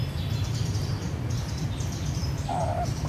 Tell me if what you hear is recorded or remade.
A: remade